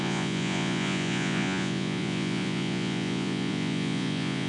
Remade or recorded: remade